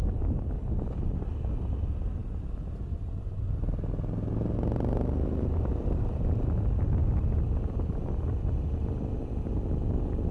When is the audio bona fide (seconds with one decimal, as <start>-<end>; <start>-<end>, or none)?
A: 0.0-10.3